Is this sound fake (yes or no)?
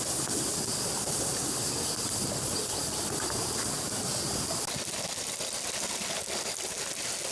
no